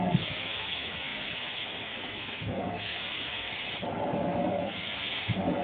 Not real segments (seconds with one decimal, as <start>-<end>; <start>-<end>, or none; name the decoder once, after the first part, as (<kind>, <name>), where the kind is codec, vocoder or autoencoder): 0.0-3.5 (codec, SNAC); 4.1-5.6